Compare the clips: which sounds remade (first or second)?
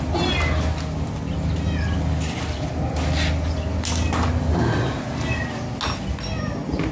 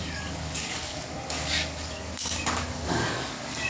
second